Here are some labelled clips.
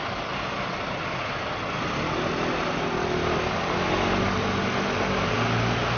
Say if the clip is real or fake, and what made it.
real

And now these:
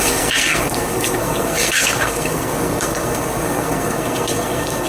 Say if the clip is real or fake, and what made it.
fake, codec, SNAC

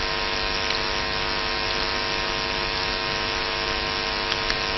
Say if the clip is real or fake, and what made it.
real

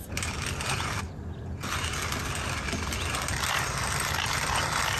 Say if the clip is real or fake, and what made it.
real